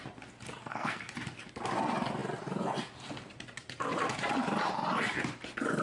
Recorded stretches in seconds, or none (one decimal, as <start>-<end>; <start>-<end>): 0.0-0.6; 1.1-5.8